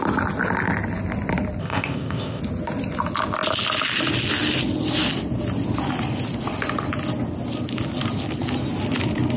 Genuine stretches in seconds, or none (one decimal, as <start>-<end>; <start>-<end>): 0.0-1.6; 2.4-9.4